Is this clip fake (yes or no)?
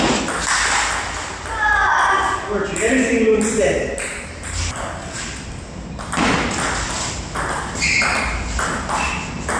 no